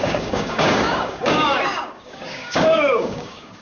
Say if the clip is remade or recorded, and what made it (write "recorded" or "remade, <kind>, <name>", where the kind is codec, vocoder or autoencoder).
remade, codec, DAC